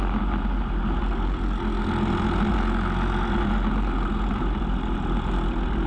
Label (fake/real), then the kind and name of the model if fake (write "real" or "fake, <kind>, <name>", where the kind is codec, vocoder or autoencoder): real